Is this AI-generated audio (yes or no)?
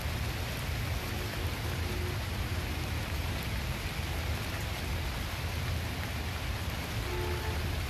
no